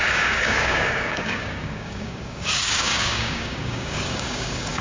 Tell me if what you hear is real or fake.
fake